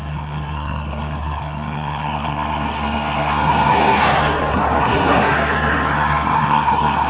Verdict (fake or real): fake